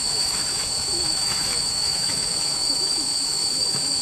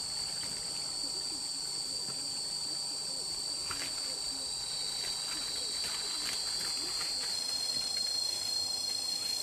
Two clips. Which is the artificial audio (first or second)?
first